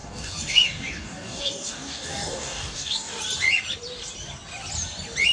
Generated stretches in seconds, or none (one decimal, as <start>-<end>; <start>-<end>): 0.0-3.2